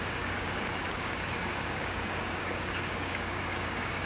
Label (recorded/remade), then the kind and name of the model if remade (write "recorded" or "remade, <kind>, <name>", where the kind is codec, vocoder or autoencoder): remade, codec, DAC